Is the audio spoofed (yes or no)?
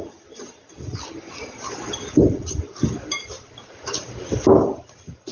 no